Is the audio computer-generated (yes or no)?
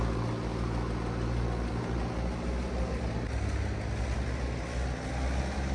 no